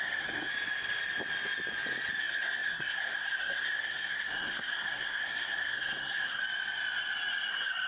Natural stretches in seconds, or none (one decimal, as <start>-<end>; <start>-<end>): 0.5-2.2; 6.4-7.5